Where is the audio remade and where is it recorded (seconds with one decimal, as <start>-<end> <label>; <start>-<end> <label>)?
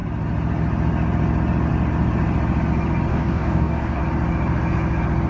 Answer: 0.0-3.1 recorded; 3.1-4.0 remade; 4.0-5.3 recorded